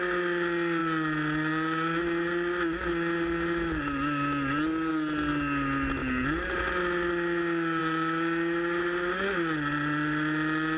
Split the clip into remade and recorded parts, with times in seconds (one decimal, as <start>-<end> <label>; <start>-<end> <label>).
0.0-10.8 recorded